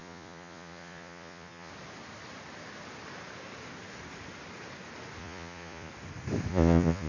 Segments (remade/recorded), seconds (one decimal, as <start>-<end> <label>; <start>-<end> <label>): 0.0-1.7 remade; 1.7-5.2 recorded; 5.2-5.9 remade; 5.9-6.5 recorded; 6.5-7.1 remade